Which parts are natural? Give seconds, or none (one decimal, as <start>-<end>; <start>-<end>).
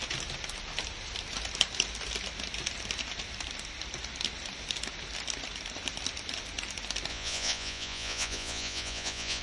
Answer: 0.0-7.1